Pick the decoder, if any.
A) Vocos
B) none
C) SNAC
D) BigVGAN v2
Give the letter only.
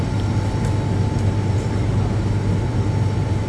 B